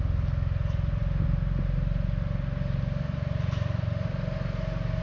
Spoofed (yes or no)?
no